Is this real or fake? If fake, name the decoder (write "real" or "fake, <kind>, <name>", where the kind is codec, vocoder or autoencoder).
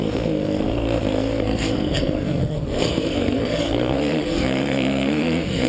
fake, codec, SNAC